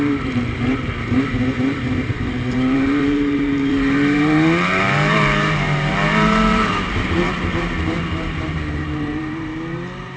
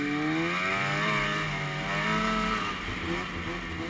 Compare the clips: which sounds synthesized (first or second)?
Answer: first